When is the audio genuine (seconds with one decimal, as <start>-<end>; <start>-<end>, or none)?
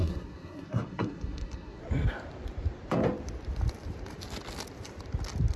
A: 1.8-5.6